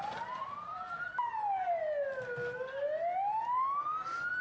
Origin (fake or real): real